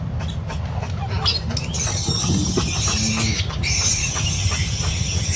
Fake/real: real